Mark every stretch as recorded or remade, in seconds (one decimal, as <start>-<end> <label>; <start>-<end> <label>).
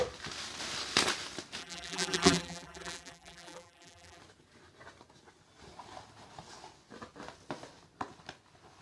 0.0-1.6 recorded; 1.6-4.2 remade; 4.2-8.8 recorded